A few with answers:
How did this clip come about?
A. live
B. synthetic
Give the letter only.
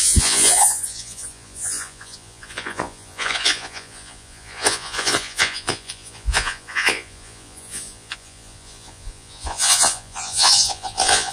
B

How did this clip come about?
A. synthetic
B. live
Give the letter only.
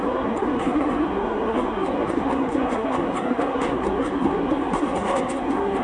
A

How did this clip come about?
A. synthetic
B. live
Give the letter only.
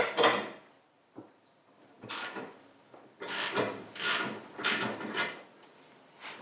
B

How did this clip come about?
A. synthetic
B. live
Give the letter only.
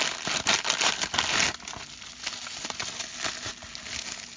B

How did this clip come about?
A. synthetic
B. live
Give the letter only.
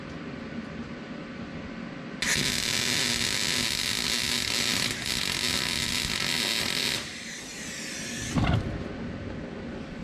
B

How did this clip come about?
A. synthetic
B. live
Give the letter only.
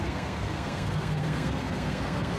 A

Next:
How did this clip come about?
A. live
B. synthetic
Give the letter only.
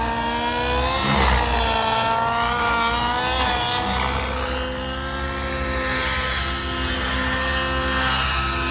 A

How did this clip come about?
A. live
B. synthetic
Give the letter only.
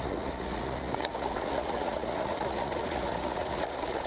B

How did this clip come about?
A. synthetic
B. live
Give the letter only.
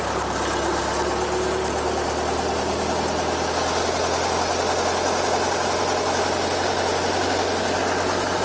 B